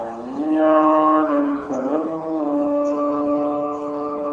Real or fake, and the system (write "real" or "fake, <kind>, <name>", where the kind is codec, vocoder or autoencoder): fake, codec, HILCodec